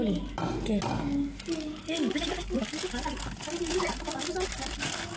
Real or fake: real